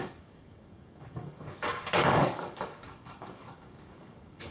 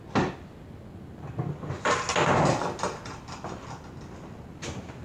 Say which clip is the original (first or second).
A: second